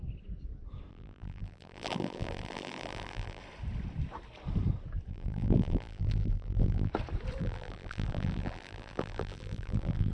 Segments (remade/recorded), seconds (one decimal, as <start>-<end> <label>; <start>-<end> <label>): 0.0-0.9 recorded; 0.9-3.4 remade; 3.4-5.1 recorded; 5.1-6.9 remade; 6.9-7.4 recorded; 7.4-10.1 remade